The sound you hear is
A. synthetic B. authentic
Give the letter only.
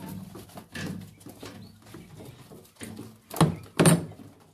B